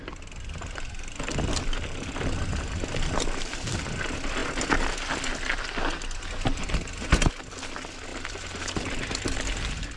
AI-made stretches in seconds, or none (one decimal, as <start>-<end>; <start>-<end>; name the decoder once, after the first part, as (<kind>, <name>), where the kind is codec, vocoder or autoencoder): 8.1-8.6 (vocoder, BigVGAN v2)